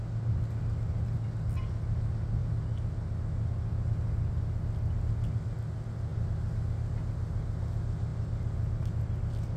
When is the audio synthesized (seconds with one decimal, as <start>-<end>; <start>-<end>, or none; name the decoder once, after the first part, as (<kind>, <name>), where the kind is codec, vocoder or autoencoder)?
none